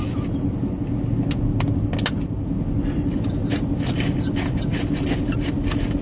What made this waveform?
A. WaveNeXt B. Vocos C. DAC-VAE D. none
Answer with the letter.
D